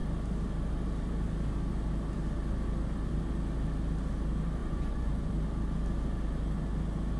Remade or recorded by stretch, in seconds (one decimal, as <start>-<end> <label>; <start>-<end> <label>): 0.0-4.6 recorded; 4.6-5.3 remade; 5.3-7.2 recorded